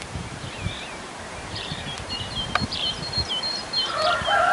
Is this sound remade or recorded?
remade